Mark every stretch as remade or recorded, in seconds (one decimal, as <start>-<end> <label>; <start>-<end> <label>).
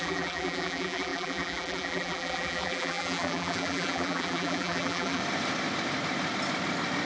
0.0-5.2 remade; 5.2-7.1 recorded